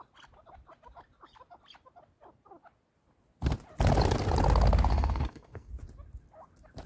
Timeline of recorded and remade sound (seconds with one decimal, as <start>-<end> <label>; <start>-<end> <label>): 0.0-4.9 recorded; 4.9-5.7 remade; 5.7-6.9 recorded